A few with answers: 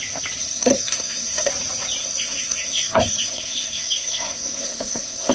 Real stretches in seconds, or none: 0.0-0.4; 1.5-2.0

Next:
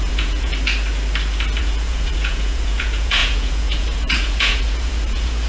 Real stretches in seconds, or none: 0.5-1.6

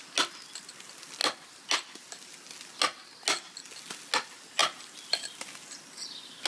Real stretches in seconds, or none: 0.0-6.5